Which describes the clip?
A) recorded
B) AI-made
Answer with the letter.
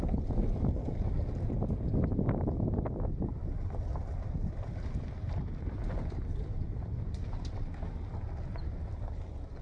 A